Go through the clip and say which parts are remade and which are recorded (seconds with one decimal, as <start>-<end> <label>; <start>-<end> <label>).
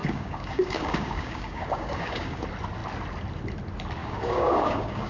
0.0-2.4 remade; 2.4-4.0 recorded; 4.0-5.1 remade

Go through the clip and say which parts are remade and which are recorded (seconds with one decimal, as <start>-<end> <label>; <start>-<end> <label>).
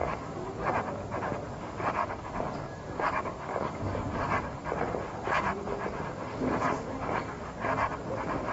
0.0-0.7 remade; 0.7-2.0 recorded; 2.0-4.6 remade; 4.6-6.2 recorded; 6.2-7.4 remade; 7.4-8.5 recorded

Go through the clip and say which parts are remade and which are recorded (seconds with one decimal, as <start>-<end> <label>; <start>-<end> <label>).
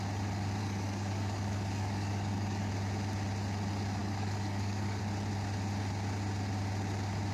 0.0-0.6 recorded; 0.6-2.7 remade; 2.7-4.0 recorded; 4.0-5.0 remade; 5.0-7.3 recorded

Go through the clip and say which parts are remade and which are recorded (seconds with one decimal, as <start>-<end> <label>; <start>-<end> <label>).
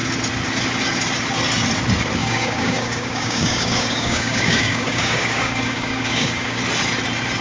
0.0-2.2 recorded; 2.2-6.6 remade; 6.6-7.4 recorded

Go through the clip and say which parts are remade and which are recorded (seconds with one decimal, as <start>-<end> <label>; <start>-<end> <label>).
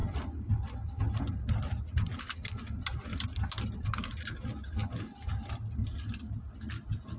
0.0-7.2 recorded